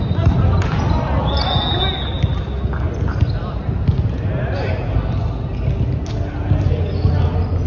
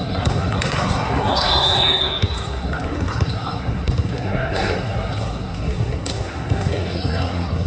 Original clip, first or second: first